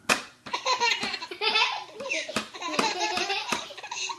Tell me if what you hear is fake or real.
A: real